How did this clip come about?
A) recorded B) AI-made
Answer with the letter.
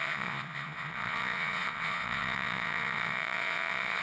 B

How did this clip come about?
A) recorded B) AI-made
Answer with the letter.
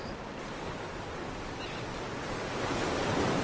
A